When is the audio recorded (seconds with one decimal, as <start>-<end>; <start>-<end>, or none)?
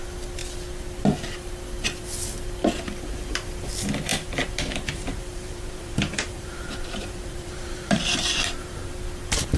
0.0-4.1; 9.0-9.6